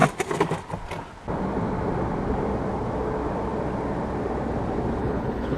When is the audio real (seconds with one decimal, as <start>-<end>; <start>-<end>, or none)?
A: 0.0-5.0